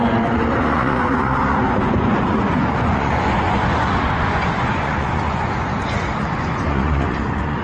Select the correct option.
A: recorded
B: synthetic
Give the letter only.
B